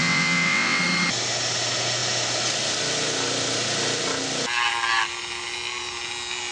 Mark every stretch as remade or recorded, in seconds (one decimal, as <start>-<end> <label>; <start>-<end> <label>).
0.0-0.8 remade; 0.8-6.5 recorded